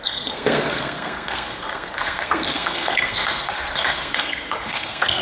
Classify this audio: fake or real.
fake